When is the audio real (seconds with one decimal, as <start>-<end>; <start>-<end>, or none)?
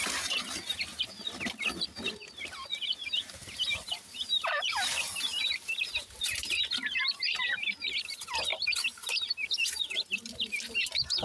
0.0-2.9; 7.7-8.5; 9.8-11.2